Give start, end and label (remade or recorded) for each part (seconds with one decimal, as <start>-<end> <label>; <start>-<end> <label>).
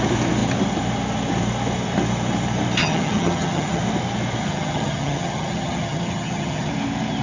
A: 0.0-2.8 recorded; 2.8-3.8 remade; 3.8-4.4 recorded; 4.4-6.7 remade; 6.7-7.2 recorded